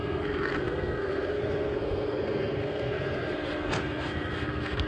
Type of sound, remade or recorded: remade